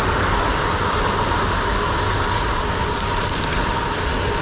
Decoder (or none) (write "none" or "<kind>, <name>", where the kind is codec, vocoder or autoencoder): none